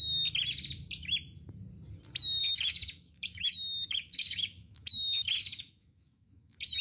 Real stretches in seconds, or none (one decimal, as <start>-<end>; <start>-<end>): 0.0-2.4